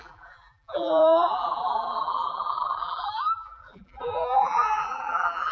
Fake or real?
fake